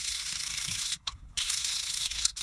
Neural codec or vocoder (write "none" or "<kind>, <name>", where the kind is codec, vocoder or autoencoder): codec, SNAC